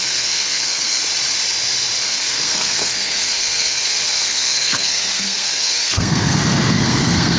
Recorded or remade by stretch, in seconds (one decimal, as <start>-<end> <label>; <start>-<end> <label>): 0.0-1.0 remade; 1.0-2.0 recorded; 2.0-7.4 remade